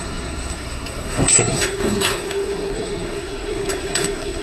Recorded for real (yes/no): no